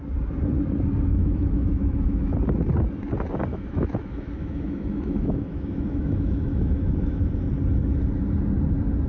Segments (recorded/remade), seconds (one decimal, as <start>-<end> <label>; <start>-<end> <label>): 0.0-1.1 recorded; 1.1-2.3 remade; 2.3-3.5 recorded; 3.5-7.3 remade; 7.3-9.1 recorded